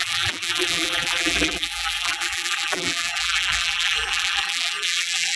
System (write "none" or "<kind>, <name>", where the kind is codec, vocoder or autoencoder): vocoder, BigVGAN v2